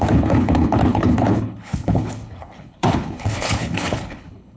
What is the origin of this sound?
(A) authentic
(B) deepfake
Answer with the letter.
B